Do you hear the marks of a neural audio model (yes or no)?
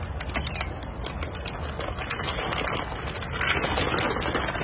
no